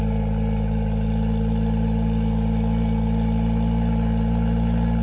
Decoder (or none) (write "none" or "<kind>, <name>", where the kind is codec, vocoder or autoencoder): none